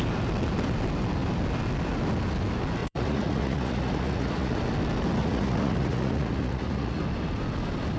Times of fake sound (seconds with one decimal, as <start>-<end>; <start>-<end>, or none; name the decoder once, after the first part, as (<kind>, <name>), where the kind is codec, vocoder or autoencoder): 2.8-4.6 (vocoder, Vocos); 5.2-7.0

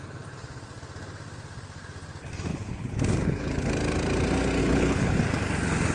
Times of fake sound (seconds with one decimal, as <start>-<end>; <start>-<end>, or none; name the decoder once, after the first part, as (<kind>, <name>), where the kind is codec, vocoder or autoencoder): 2.5-3.7 (codec, HILCodec); 4.6-5.2